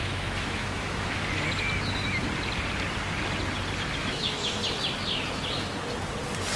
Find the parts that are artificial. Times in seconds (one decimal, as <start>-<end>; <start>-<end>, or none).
0.0-1.1; 4.0-4.6